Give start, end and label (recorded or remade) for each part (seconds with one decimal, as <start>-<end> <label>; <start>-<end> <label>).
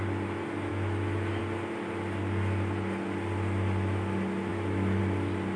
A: 0.0-0.7 recorded; 0.7-1.4 remade; 1.4-4.5 recorded; 4.5-5.0 remade; 5.0-5.6 recorded